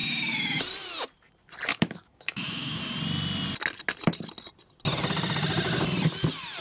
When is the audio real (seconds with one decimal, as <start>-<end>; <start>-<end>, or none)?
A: 0.6-1.7; 2.8-6.6